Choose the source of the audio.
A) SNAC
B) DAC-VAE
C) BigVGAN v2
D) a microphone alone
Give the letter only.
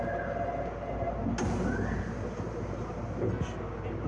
D